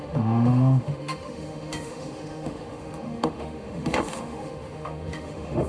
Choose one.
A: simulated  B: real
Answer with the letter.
A